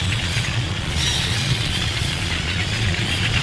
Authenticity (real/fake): fake